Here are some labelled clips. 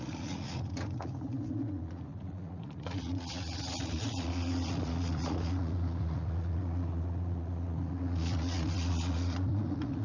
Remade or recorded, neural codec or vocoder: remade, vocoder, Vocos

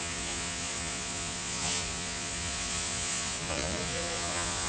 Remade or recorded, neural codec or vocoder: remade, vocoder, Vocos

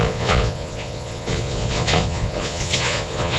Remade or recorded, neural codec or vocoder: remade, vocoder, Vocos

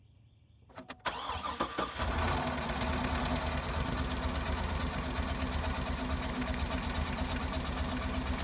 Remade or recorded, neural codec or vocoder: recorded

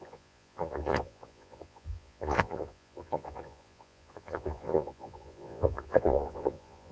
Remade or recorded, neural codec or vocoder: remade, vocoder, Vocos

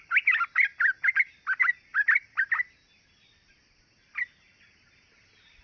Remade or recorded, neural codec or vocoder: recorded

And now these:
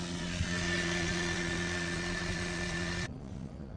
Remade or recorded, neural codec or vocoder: remade, vocoder, Vocos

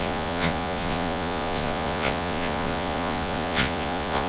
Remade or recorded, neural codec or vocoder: remade, vocoder, Vocos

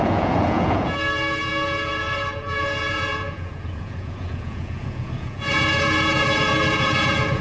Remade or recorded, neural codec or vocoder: remade, vocoder, Vocos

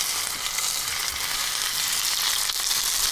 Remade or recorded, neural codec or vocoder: recorded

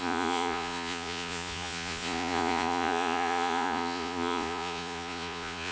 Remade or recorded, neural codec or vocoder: remade, vocoder, Vocos